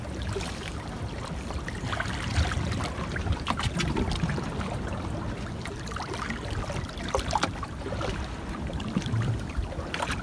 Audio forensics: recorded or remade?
recorded